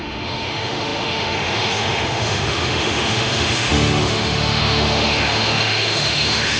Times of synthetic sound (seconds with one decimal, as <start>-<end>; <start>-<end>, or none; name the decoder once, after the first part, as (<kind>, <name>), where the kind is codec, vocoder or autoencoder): 0.0-6.6 (autoencoder, DAC-VAE)